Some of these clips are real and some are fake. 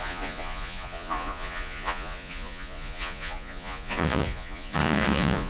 fake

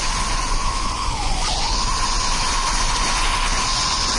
fake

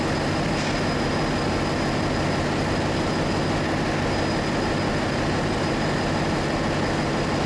real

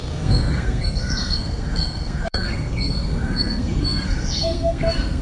fake